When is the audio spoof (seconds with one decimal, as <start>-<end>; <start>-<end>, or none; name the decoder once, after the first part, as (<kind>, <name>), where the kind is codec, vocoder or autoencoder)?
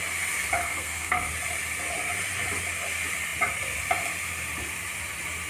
0.6-1.3 (codec, SNAC)